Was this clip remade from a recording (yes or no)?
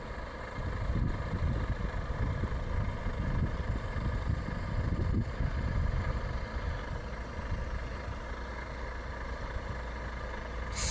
no